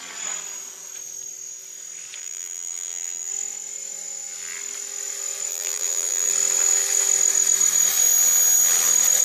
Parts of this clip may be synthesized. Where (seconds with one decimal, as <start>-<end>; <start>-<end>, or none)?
2.2-3.3; 5.5-6.3